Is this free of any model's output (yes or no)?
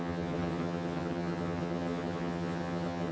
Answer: no